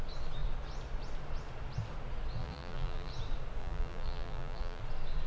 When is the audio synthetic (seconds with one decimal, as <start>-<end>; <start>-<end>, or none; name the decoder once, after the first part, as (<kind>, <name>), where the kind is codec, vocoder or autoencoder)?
2.4-3.1 (vocoder, BigVGAN v2); 3.6-4.8